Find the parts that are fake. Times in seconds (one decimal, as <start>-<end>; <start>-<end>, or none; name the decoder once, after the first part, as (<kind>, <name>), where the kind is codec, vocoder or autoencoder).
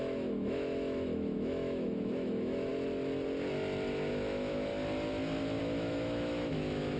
0.0-2.7 (autoencoder, DAC-VAE); 4.1-4.7; 5.6-7.0